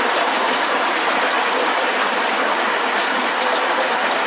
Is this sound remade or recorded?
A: recorded